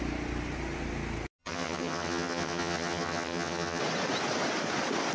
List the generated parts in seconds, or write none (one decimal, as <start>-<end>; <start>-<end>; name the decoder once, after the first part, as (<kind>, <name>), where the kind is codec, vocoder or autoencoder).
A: 1.4-3.8 (vocoder, HiFi-GAN)